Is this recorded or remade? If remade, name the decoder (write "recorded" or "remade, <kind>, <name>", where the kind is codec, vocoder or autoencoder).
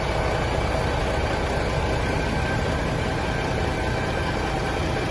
recorded